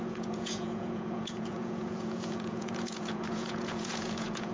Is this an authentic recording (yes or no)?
no